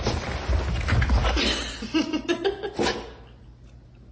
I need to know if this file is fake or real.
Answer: real